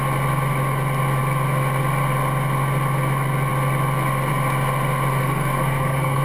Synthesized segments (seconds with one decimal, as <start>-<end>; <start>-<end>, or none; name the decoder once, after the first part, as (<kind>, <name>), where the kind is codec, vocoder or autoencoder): 5.2-6.2 (codec, SNAC)